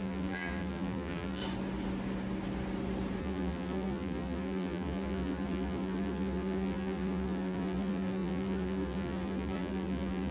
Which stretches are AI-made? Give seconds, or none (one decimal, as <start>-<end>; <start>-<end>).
0.0-1.4; 3.2-10.3